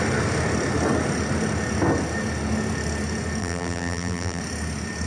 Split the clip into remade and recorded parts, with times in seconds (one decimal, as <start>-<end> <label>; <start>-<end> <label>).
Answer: 0.0-3.4 recorded; 3.4-4.4 remade; 4.4-5.1 recorded